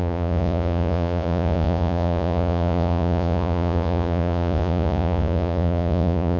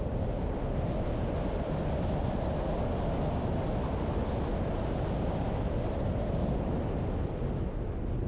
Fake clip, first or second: first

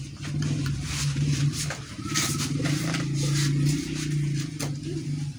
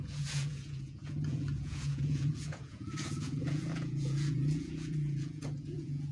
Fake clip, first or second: second